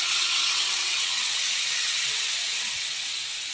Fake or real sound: fake